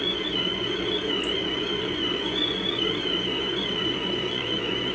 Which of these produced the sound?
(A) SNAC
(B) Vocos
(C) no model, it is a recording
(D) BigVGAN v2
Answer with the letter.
B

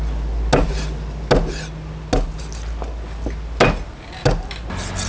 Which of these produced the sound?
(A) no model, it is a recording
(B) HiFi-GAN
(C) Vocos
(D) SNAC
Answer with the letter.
A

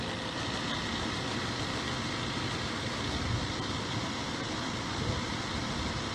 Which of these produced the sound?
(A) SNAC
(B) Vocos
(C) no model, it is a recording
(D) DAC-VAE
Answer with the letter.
C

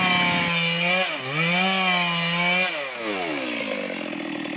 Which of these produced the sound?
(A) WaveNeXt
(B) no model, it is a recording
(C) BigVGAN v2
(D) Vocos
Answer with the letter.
B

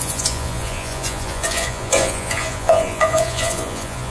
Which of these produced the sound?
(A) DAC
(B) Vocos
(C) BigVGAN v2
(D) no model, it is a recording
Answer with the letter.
B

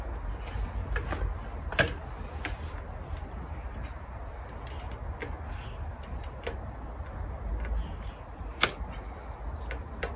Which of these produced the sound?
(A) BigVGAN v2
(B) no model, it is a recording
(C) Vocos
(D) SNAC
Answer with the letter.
B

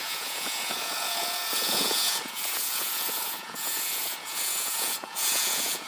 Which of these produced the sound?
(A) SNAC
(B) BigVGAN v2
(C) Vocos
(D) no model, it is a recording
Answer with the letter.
C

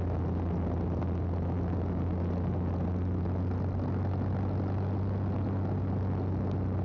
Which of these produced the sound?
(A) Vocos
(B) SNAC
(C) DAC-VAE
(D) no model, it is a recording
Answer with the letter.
D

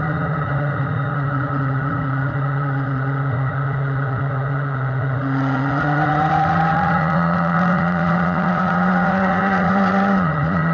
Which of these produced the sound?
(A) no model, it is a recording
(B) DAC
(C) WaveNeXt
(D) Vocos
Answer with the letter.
D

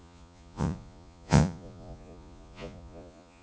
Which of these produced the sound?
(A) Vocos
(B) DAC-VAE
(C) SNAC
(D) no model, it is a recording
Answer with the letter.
A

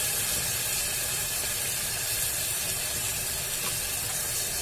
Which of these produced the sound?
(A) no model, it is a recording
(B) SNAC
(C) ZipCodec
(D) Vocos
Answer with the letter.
A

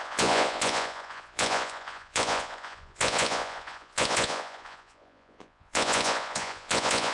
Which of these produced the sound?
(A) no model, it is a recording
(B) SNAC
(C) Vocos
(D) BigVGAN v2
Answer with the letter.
C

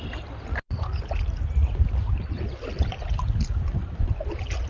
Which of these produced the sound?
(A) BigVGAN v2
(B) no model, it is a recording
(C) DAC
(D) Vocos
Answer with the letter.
B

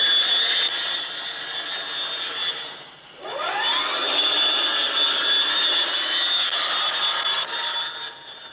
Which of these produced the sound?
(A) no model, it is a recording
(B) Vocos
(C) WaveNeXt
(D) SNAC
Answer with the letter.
A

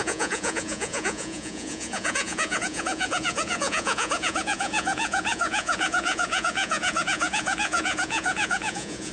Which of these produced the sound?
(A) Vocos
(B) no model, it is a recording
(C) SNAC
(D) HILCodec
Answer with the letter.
A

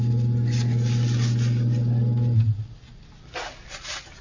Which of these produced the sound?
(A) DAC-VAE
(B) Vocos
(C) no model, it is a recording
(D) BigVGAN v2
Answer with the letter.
C